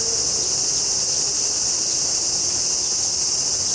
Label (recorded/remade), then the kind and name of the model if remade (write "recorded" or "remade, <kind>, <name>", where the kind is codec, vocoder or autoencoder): recorded